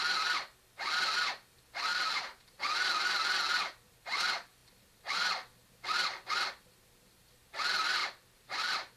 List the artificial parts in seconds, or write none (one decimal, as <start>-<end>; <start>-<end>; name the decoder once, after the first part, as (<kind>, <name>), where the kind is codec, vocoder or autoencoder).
1.9-2.4 (vocoder, BigVGAN v2); 8.0-9.0